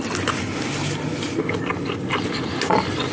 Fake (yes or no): no